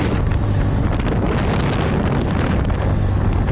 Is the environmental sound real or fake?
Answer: real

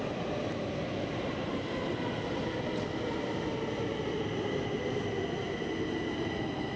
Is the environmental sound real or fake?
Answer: real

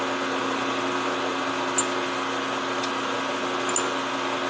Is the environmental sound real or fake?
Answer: real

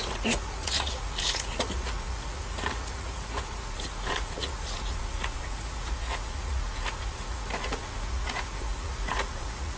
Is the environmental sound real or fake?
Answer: fake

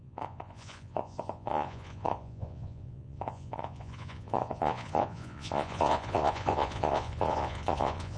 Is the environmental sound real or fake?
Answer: fake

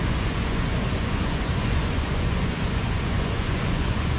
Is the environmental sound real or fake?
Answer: fake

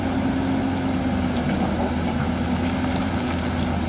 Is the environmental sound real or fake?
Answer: real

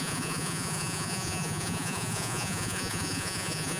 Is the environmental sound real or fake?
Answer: fake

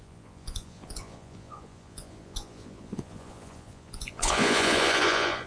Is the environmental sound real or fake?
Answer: fake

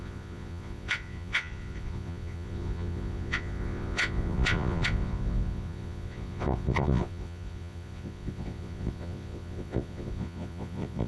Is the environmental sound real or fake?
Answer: fake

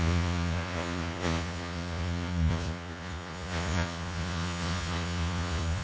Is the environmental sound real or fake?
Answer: fake